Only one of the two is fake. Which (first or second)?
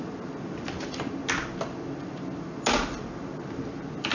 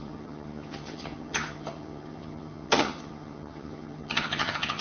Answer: second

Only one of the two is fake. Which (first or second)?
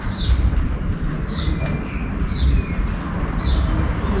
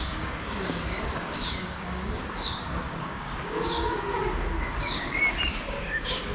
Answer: second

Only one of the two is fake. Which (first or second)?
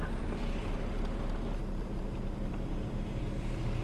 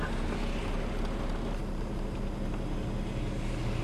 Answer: first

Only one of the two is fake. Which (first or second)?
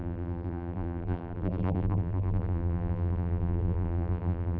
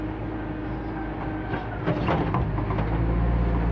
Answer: first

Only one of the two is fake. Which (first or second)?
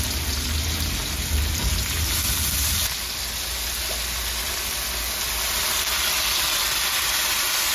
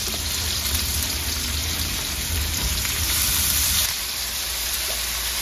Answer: second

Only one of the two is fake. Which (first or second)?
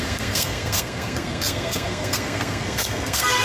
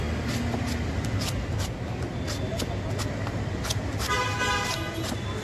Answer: first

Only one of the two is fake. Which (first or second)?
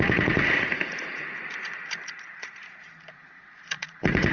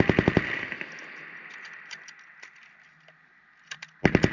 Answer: first